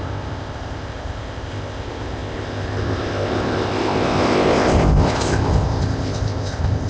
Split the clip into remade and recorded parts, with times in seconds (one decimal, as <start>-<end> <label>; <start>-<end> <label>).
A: 0.0-6.9 remade